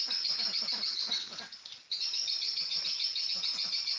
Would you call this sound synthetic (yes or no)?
yes